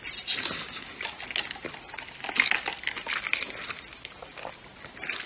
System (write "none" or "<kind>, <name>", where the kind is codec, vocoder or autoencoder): none